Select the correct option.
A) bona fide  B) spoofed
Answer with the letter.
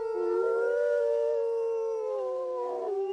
A